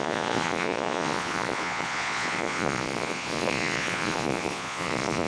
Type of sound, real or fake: fake